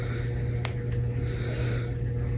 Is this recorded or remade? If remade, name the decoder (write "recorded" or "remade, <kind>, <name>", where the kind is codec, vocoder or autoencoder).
recorded